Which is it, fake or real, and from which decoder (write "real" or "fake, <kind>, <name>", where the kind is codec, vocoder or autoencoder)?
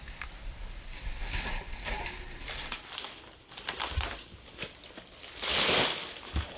real